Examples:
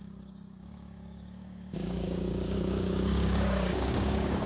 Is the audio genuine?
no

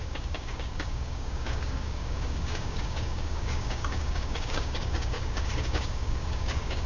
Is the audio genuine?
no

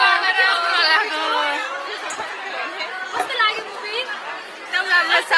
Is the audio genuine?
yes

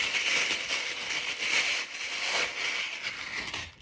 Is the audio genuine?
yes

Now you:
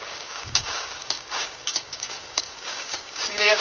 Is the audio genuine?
no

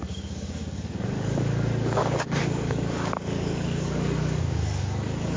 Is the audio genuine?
no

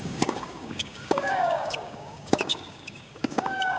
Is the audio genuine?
no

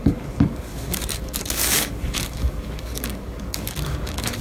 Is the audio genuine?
no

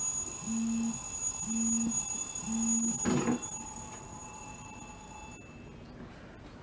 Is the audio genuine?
yes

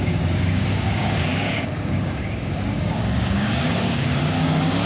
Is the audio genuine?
no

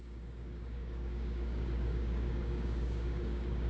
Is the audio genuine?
no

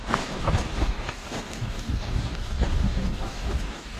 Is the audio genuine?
no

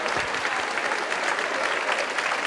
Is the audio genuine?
yes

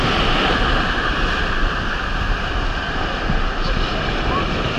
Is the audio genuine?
yes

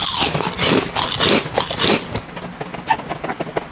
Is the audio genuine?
yes